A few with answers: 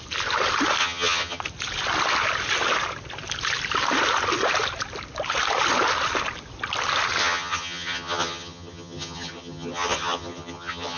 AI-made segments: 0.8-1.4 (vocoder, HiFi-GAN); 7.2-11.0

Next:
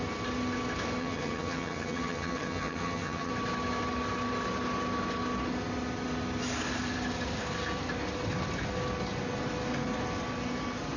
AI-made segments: 1.0-3.3 (vocoder, HiFi-GAN)

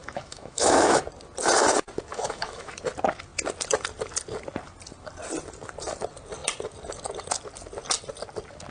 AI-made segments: 0.0-1.0 (autoencoder, DAC-VAE); 2.1-2.8

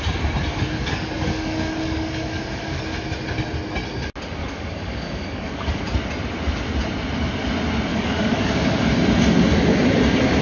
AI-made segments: 0.5-2.8 (codec, DAC); 4.4-5.8; 7.9-8.8

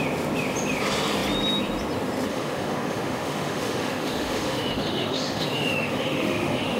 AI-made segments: 2.3-6.8 (autoencoder, DAC-VAE)

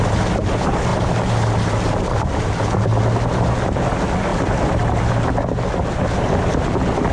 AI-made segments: none

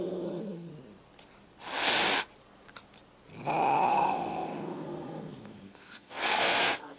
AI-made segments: 0.0-0.7 (codec, SNAC); 3.9-7.0

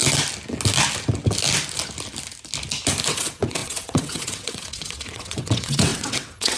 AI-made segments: 3.1-6.6 (vocoder, WaveNeXt)